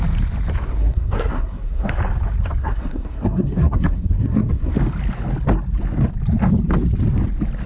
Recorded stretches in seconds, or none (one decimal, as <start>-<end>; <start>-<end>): 0.0-0.8; 1.9-2.6; 4.7-7.7